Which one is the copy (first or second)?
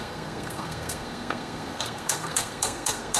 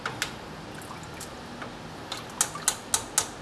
first